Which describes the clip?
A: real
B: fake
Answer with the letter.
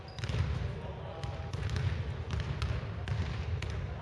A